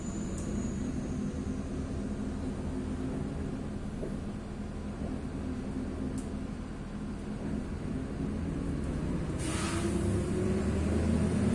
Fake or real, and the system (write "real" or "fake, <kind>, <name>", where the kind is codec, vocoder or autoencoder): real